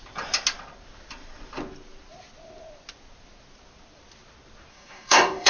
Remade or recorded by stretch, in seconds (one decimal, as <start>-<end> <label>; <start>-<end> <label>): 0.0-4.7 recorded; 4.7-5.5 remade